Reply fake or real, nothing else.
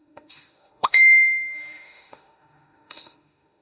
fake